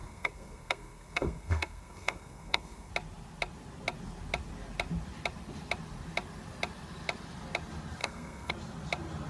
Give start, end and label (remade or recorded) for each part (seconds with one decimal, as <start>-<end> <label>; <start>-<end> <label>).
0.0-2.9 remade; 2.9-8.0 recorded; 8.0-8.5 remade; 8.5-9.3 recorded